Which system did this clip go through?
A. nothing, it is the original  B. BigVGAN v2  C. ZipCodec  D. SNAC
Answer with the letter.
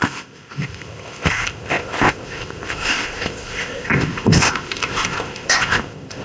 C